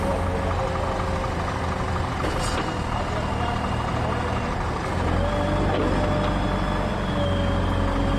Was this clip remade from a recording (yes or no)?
no